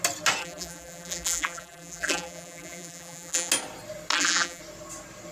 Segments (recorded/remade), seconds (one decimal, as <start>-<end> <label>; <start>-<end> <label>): 0.0-0.4 recorded; 0.4-3.5 remade; 3.5-4.1 recorded; 4.1-4.6 remade; 4.6-5.3 recorded